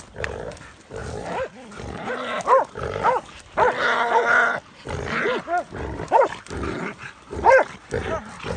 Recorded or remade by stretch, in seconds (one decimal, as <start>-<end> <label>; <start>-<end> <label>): 0.0-8.6 recorded